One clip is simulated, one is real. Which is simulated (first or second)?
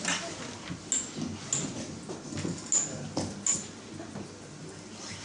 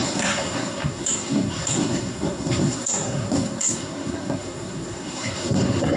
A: second